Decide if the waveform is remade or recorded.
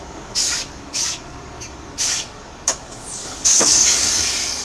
remade